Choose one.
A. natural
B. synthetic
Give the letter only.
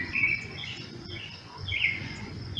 B